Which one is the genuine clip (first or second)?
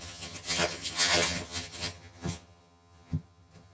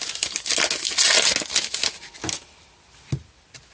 second